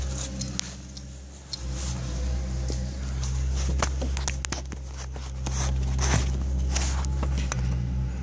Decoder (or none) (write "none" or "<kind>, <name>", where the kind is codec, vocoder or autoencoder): none